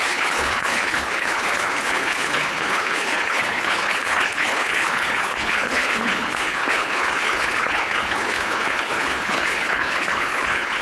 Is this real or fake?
fake